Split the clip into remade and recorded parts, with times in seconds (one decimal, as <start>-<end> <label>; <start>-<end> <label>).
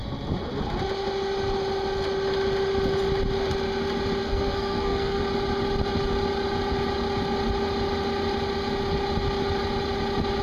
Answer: 0.0-4.2 recorded; 4.2-5.2 remade; 5.2-10.4 recorded